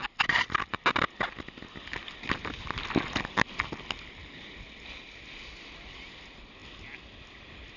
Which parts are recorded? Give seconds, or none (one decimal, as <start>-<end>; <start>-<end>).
0.0-7.8